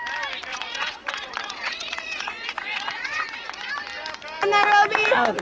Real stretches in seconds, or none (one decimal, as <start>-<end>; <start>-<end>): 0.0-0.5; 3.7-5.4